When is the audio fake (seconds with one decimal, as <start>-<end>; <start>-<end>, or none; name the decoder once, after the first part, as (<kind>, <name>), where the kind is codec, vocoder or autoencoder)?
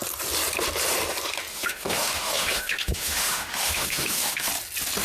1.5-4.5 (autoencoder, DAC-VAE)